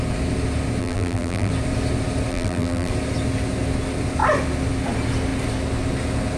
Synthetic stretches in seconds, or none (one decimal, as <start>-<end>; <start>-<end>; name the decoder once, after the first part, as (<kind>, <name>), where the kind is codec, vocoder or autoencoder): 0.8-1.5 (vocoder, BigVGAN v2); 2.3-2.9